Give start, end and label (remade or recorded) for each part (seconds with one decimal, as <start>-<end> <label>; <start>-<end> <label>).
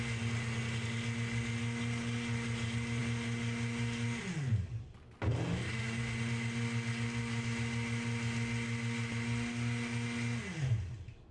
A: 0.0-11.3 recorded